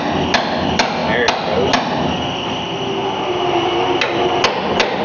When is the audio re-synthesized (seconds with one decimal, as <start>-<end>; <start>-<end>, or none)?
none

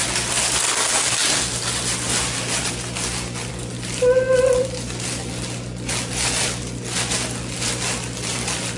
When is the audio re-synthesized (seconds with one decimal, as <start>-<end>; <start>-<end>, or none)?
none

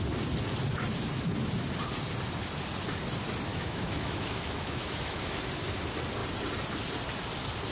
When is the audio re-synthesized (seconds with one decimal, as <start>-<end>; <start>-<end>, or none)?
3.5-5.4

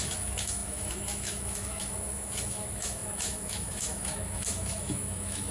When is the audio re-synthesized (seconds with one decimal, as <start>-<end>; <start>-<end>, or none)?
0.0-5.5

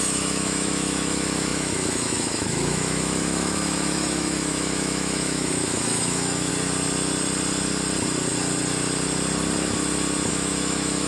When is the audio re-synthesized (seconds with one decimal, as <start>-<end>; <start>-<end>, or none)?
0.0-6.5; 10.3-11.1

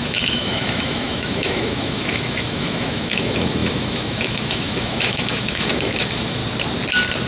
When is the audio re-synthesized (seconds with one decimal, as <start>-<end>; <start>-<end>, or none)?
0.0-6.4